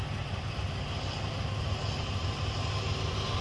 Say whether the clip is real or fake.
real